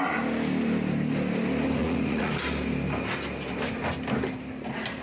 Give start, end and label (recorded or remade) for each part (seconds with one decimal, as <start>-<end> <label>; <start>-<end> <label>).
0.0-1.8 recorded; 1.8-2.3 remade; 2.3-5.0 recorded